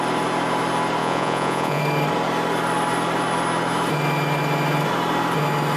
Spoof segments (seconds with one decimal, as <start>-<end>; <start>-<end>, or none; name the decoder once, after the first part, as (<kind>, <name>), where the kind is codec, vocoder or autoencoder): 1.0-1.8 (vocoder, Vocos)